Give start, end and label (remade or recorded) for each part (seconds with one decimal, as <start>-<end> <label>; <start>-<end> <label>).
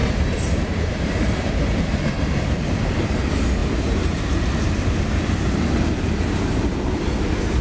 0.0-1.5 remade; 1.5-7.6 recorded